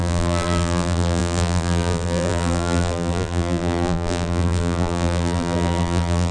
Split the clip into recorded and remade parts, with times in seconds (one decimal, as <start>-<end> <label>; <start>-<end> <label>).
0.0-6.3 remade